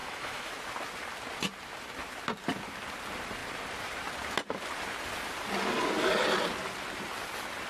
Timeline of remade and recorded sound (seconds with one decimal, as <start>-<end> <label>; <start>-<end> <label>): 0.0-0.5 remade; 0.5-7.7 recorded